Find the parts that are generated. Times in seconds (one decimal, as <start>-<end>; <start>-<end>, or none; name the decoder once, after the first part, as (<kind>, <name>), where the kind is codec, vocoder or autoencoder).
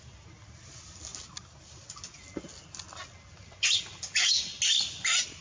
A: none